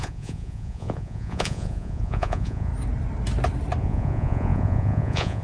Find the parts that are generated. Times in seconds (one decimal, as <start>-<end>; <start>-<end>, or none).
0.0-2.7; 3.8-5.4